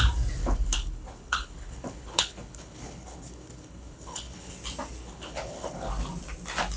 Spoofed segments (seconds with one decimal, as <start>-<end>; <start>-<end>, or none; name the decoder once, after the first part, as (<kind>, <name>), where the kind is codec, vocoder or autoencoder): 0.4-4.5 (codec, HILCodec); 5.0-5.9